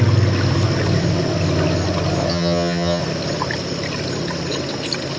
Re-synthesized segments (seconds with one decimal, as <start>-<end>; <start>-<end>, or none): 2.3-3.0